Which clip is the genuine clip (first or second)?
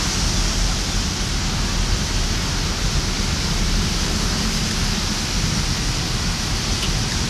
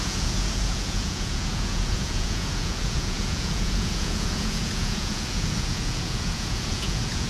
first